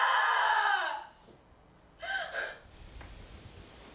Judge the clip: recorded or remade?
recorded